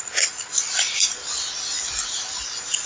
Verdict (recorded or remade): recorded